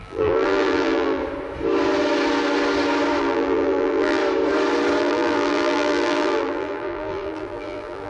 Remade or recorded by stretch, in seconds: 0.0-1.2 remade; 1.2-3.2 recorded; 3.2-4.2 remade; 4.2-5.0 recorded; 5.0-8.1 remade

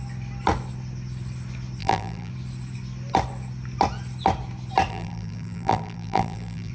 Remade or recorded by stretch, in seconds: 0.0-1.8 recorded; 1.8-2.3 remade; 2.3-4.9 recorded; 4.9-6.7 remade